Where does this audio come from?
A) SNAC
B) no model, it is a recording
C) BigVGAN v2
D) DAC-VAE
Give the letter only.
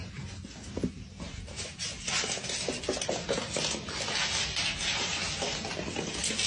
B